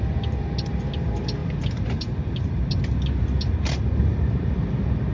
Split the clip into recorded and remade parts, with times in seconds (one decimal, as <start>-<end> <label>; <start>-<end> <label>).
0.0-5.1 recorded